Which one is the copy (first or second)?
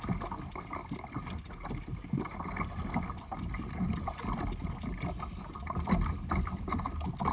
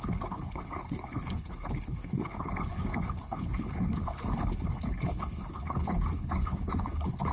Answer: second